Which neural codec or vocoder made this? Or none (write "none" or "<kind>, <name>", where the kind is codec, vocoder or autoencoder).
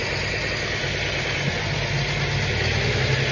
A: none